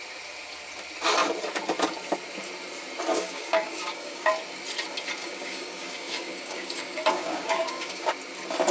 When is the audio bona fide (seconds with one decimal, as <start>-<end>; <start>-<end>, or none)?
0.0-3.1; 4.3-5.2; 8.1-8.7